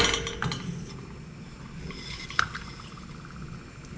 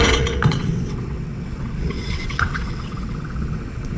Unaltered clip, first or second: first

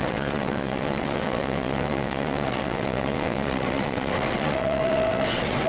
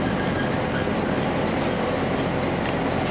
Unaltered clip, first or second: second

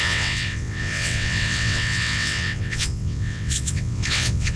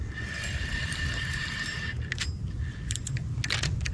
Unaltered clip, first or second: second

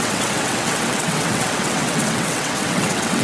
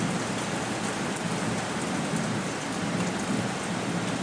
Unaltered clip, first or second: second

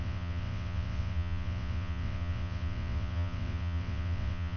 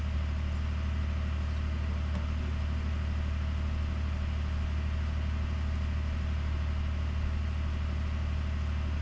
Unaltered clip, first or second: second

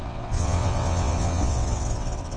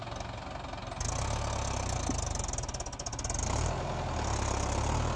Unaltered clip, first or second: second